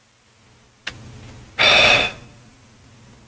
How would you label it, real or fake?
real